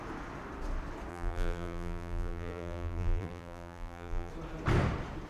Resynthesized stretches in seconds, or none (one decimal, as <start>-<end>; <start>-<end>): 1.1-4.3